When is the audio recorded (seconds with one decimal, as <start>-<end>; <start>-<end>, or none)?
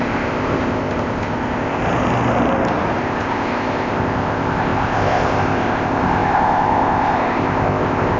1.8-3.0